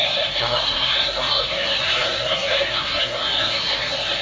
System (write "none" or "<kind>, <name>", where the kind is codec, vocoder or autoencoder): codec, SNAC